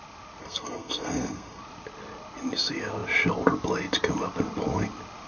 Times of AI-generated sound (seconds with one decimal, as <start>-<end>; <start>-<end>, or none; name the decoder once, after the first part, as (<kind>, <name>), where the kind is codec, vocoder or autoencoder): 0.4-1.6 (codec, SNAC)